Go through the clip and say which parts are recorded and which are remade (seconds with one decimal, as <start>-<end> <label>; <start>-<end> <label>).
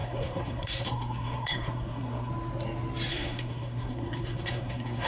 0.0-2.3 remade; 2.3-3.1 recorded; 3.1-5.1 remade